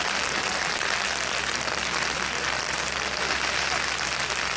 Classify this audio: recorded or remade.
recorded